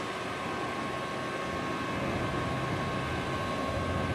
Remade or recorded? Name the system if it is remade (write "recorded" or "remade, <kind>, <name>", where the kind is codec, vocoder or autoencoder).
recorded